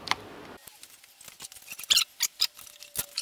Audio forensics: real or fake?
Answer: real